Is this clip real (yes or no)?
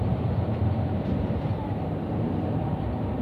no